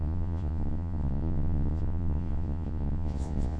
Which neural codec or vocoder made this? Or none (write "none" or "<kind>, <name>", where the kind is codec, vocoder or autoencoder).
vocoder, Vocos